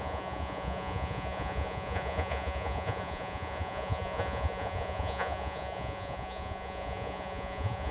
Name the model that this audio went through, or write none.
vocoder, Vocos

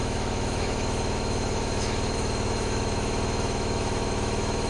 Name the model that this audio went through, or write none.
autoencoder, DAC-VAE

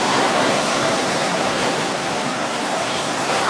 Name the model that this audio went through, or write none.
codec, SNAC